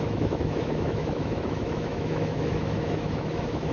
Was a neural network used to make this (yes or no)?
yes